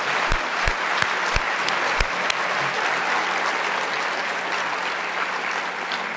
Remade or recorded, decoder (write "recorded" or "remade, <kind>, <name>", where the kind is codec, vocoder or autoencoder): recorded